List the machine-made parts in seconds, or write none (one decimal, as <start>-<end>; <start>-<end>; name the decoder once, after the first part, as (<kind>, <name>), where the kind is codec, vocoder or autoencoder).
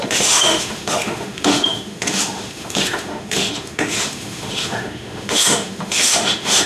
0.0-6.7 (autoencoder, DAC-VAE)